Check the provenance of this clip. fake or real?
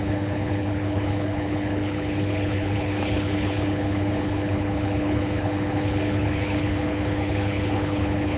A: fake